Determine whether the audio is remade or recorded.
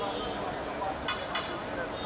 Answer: recorded